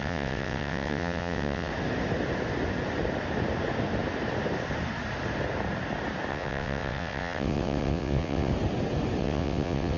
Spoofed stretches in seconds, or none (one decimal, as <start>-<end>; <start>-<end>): 0.0-1.7; 6.3-8.5; 9.2-10.0